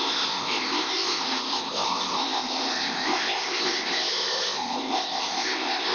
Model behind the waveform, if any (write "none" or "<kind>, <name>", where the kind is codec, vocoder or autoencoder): codec, ZipCodec